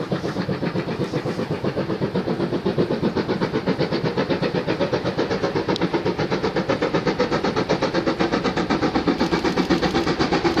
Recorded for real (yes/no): yes